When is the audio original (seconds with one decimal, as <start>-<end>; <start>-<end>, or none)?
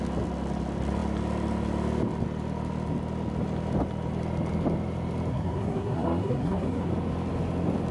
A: 0.0-5.3; 6.9-7.9